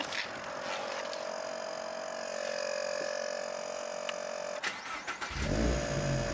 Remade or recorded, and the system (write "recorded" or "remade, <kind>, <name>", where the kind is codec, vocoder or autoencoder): recorded